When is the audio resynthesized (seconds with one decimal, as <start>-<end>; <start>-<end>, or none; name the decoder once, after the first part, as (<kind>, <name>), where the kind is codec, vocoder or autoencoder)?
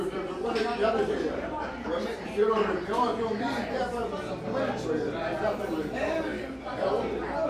0.0-4.0 (vocoder, BigVGAN v2); 5.6-6.3; 7.0-7.5